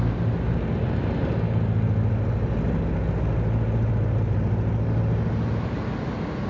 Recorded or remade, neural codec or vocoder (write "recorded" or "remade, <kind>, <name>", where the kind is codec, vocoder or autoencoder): recorded